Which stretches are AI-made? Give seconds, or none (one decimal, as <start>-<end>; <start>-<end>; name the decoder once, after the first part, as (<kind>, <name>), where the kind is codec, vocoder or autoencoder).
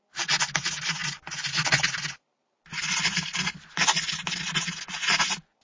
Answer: none